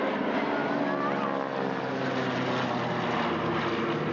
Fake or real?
real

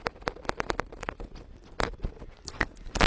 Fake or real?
real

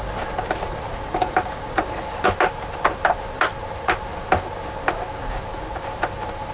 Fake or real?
real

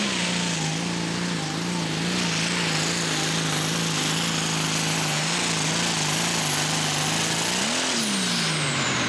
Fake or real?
real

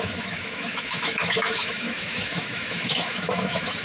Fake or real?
fake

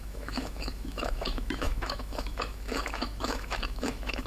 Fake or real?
fake